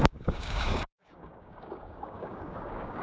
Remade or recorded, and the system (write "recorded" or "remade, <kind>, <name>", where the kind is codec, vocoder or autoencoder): remade, codec, DAC